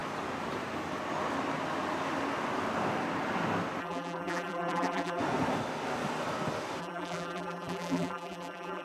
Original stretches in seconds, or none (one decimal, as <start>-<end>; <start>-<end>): 0.0-3.8; 5.2-6.8